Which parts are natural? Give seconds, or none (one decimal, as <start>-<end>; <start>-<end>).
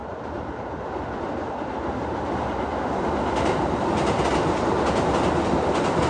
0.0-6.1